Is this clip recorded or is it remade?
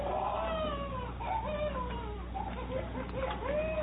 recorded